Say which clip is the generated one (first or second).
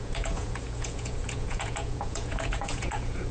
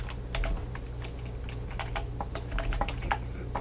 first